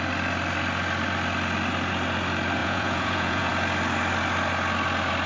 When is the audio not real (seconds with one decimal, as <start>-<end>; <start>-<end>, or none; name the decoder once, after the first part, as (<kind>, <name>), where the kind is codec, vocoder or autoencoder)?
2.6-3.5 (vocoder, Vocos)